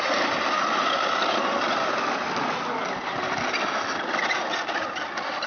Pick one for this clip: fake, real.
real